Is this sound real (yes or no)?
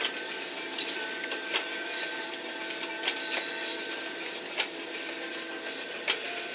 yes